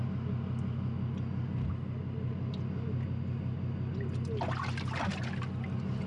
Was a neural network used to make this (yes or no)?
no